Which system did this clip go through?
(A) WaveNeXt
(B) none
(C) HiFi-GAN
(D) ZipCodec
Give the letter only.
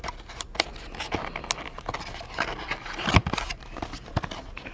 B